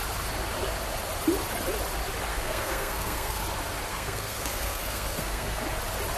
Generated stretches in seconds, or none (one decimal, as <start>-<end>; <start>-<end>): 2.3-3.4; 3.9-5.6